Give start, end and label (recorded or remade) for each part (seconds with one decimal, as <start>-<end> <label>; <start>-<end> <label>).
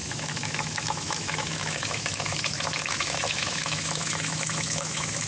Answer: 0.0-5.3 remade